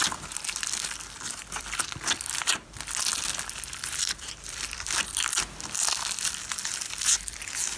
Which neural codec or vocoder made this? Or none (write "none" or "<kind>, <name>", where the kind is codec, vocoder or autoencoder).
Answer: vocoder, BigVGAN v2